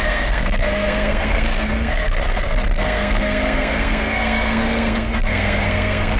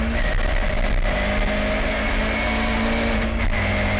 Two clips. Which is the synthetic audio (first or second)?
first